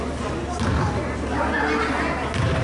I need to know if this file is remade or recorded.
recorded